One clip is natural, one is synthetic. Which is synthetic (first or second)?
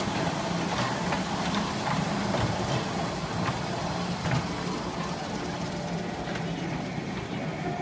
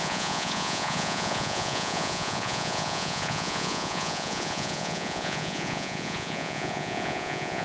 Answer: second